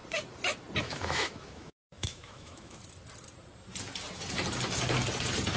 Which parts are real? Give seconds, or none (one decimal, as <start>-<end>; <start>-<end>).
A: 0.0-0.8; 2.8-5.6